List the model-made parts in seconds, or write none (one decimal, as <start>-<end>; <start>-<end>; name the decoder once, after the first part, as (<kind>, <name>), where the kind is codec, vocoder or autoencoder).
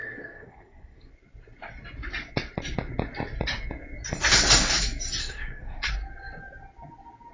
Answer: 0.0-1.1 (codec, SNAC); 5.2-5.9